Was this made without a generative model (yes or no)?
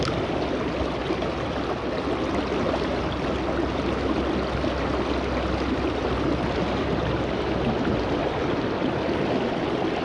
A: yes